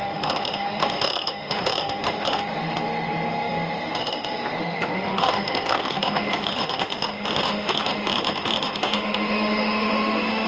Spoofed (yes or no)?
yes